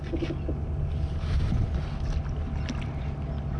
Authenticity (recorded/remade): recorded